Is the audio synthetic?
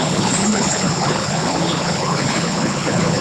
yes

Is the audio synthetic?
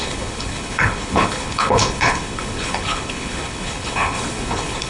yes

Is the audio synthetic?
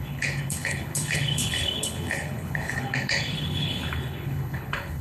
yes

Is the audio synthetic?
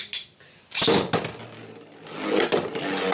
no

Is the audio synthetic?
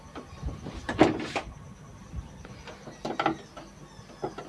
no